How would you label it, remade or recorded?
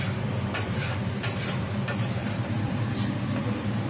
remade